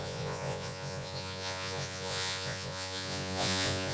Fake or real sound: fake